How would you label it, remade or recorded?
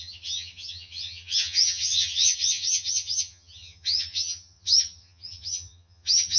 remade